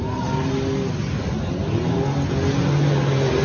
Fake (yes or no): no